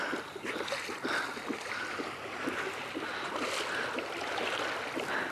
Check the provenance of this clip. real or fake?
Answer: real